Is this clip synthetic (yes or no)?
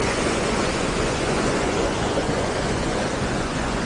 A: yes